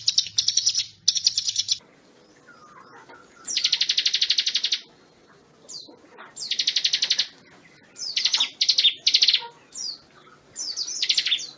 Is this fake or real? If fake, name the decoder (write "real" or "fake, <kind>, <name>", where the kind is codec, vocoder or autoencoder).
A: real